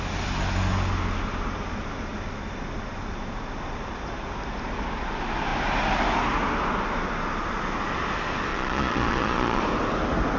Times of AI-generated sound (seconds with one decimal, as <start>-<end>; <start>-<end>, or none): 8.5-9.6